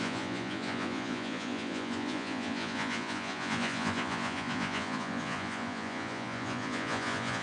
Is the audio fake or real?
fake